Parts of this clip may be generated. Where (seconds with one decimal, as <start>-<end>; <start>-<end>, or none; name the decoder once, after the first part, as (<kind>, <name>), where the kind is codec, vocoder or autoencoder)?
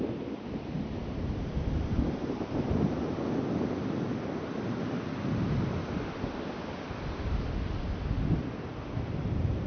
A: none